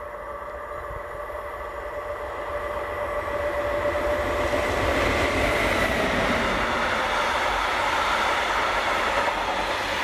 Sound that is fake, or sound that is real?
real